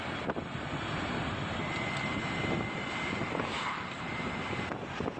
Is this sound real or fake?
real